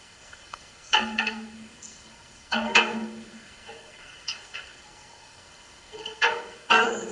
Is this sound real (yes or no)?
no